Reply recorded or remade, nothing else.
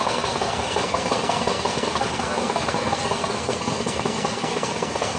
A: remade